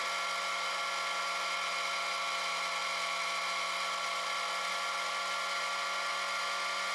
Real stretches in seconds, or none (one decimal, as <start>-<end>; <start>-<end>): 0.0-6.9

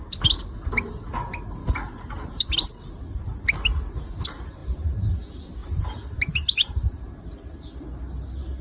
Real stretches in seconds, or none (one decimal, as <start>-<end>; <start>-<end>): 0.0-1.6; 3.0-4.6; 5.1-5.6; 7.3-8.6